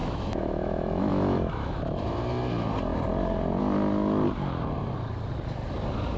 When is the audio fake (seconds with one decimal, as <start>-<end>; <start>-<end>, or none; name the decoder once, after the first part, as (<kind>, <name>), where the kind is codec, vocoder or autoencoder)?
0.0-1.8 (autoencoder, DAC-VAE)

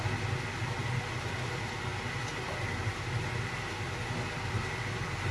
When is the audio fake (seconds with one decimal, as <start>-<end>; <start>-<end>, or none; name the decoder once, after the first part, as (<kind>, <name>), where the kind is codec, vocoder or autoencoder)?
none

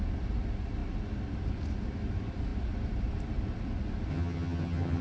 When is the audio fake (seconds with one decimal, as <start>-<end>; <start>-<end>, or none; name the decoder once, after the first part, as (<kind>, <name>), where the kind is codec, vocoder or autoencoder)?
4.1-5.0 (vocoder, HiFi-GAN)

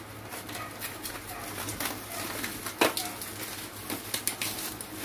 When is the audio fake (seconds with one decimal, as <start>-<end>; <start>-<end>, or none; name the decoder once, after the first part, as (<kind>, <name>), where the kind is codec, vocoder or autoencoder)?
none

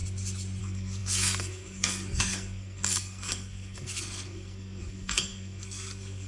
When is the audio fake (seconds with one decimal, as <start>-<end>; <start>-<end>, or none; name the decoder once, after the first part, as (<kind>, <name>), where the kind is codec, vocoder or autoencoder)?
0.6-6.3 (codec, SNAC)

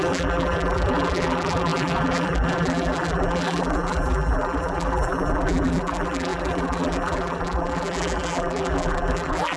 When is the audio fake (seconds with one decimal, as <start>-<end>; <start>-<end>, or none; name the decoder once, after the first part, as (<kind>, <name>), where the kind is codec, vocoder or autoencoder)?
0.0-9.6 (vocoder, BigVGAN v2)

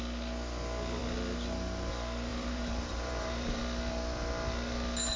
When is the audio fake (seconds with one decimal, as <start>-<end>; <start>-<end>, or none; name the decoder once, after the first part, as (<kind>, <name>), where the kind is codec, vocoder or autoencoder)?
2.3-3.6 (vocoder, BigVGAN v2)